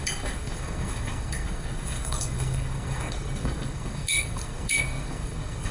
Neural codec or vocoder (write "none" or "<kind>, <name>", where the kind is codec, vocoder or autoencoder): codec, SNAC